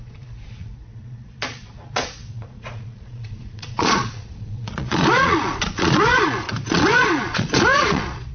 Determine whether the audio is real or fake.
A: fake